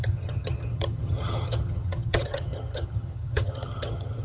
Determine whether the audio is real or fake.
fake